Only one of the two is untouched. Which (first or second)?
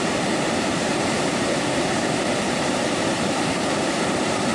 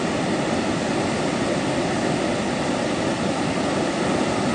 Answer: second